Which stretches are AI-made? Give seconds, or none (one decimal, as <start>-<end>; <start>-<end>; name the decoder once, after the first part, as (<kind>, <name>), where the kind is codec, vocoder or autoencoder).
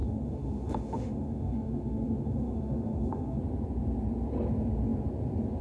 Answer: 0.0-3.4 (autoencoder, DAC-VAE)